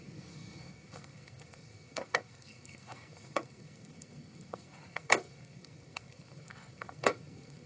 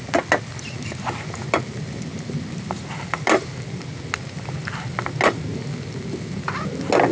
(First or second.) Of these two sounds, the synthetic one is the first